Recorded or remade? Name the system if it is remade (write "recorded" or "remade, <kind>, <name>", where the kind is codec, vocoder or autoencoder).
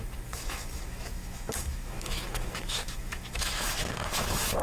remade, autoencoder, DAC-VAE